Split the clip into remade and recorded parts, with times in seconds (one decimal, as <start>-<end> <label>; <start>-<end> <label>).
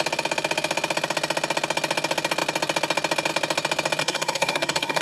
0.0-4.0 recorded; 4.0-5.0 remade